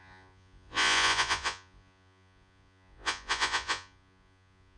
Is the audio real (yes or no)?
no